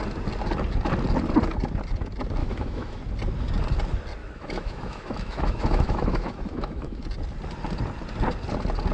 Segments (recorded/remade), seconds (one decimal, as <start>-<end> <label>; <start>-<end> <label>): 0.0-2.4 recorded; 2.4-3.0 remade; 3.0-4.2 recorded; 4.2-7.0 remade; 7.0-8.9 recorded